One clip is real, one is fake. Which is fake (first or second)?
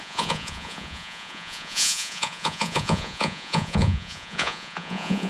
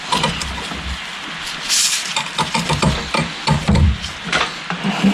first